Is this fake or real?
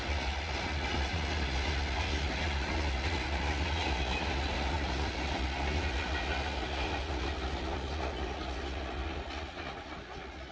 fake